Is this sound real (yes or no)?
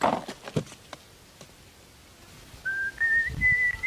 yes